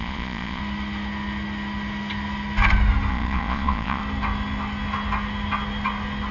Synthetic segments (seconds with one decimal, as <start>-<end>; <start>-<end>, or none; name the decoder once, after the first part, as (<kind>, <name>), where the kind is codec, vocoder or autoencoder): 0.0-0.6 (vocoder, Vocos); 3.1-4.0

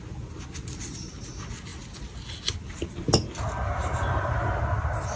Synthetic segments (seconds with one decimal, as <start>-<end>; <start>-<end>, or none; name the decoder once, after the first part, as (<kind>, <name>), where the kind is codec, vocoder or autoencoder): none

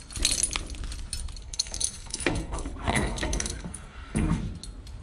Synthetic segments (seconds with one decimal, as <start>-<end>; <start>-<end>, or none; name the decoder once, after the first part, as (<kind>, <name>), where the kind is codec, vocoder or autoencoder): 1.4-4.4 (codec, SNAC)

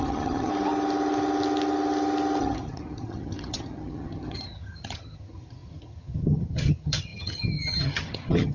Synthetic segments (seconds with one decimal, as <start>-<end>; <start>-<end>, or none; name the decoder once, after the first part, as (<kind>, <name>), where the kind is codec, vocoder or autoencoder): 0.0-0.5 (vocoder, HiFi-GAN); 2.4-8.5

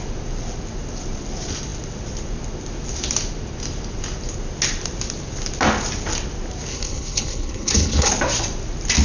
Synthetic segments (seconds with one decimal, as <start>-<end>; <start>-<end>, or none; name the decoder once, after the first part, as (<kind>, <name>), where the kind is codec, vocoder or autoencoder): 6.7-8.1 (codec, HILCodec)

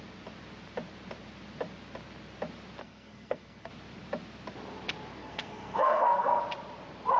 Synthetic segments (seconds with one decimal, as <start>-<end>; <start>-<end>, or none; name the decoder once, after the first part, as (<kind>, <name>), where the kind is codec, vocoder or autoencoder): 2.8-3.7 (codec, SNAC); 5.2-6.4

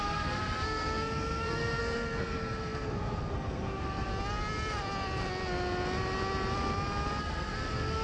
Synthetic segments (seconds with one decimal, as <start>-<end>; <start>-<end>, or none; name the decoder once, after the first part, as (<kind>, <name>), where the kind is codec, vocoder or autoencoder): 0.0-4.1 (codec, SNAC); 7.2-8.0

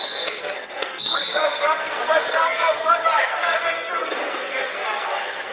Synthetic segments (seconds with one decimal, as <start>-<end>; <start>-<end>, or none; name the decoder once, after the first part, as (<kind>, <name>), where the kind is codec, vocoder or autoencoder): 0.0-5.5 (codec, SNAC)